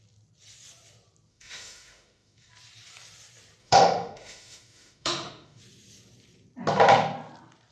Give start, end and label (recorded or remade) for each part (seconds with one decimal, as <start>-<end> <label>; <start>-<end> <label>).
0.0-1.3 recorded; 1.3-2.5 remade; 2.5-3.6 recorded; 3.6-5.6 remade; 5.6-7.7 recorded